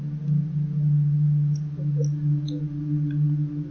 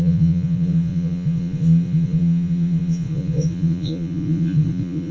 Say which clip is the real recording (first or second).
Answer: first